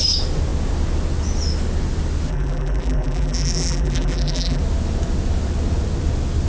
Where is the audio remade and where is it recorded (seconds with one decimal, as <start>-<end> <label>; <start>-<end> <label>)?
0.0-2.3 recorded; 2.3-4.6 remade; 4.6-6.5 recorded